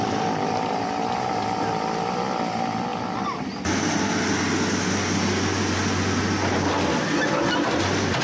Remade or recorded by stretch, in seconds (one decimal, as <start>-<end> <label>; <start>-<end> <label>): 0.0-8.2 recorded